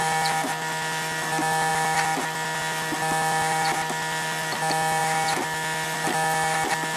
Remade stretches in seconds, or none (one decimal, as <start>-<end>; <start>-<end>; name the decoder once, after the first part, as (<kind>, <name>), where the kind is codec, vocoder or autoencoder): none